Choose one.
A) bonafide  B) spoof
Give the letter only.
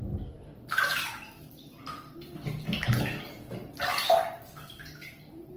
A